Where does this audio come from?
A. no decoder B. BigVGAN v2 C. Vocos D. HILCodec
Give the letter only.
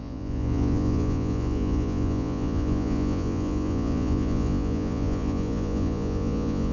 C